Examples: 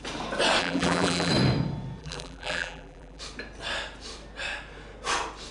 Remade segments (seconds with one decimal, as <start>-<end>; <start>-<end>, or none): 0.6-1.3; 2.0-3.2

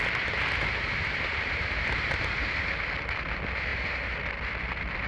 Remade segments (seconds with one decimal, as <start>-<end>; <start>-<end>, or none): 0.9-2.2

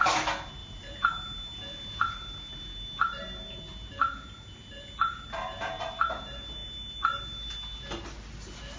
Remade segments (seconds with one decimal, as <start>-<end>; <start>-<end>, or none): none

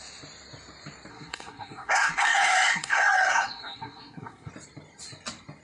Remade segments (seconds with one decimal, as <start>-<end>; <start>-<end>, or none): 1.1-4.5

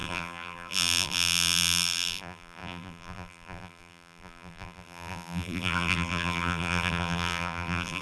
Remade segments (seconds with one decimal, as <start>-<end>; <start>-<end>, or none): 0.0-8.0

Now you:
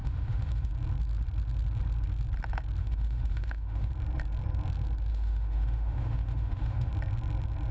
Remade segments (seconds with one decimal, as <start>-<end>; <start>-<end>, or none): 0.0-0.7; 2.8-3.9; 5.1-6.9